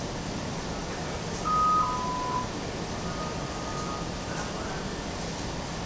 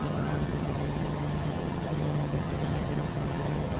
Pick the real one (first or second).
first